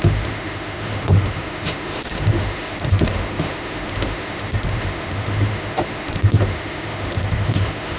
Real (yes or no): no